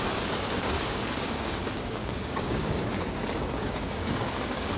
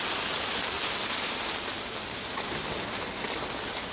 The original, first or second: second